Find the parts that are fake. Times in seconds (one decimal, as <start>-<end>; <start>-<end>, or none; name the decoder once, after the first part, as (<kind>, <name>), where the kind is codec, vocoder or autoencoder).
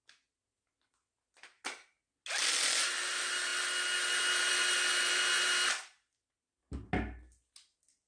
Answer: none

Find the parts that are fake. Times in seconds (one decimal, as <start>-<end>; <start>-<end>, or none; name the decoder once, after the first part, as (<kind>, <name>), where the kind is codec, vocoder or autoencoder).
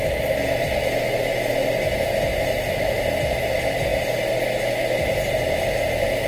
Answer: 2.3-2.9 (vocoder, BigVGAN v2)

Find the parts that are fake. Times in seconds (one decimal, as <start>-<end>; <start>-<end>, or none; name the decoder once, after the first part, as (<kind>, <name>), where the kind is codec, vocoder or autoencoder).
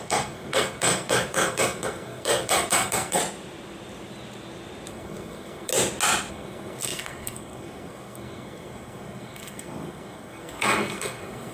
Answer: 0.0-3.2 (codec, SNAC); 4.9-5.7; 6.3-11.5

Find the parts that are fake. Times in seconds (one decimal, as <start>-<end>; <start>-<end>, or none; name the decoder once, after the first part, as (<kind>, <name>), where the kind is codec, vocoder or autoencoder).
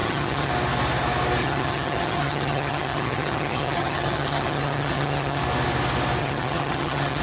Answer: 0.0-0.5 (vocoder, HiFi-GAN); 1.4-5.4; 6.2-7.2